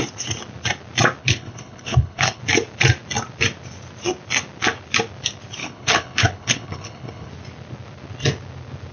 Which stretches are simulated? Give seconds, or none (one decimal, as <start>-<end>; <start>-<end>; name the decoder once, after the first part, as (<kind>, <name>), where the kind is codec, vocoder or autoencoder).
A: 1.2-2.4 (codec, HILCodec); 5.6-7.3